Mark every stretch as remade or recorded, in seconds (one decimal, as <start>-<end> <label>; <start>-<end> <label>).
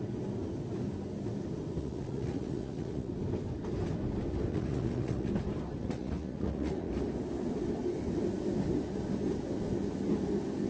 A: 0.0-1.8 recorded; 1.8-3.1 remade; 3.1-4.5 recorded; 4.5-5.3 remade; 5.3-5.8 recorded; 5.8-6.9 remade; 6.9-10.7 recorded